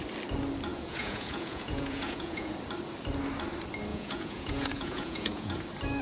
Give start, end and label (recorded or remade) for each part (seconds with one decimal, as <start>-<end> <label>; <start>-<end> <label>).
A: 0.0-0.7 recorded; 0.7-2.5 remade; 2.5-3.9 recorded; 3.9-5.6 remade; 5.6-6.0 recorded